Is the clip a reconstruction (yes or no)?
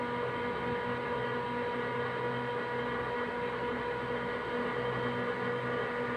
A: no